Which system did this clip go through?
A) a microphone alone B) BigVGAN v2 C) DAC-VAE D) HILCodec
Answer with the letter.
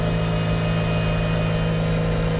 A